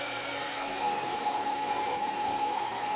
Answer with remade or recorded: remade